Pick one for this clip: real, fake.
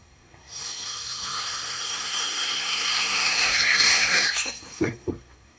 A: fake